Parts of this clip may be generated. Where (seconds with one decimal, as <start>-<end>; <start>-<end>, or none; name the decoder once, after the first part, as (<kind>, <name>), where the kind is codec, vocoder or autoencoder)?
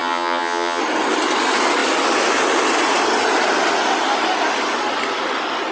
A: 0.0-0.8 (vocoder, HiFi-GAN)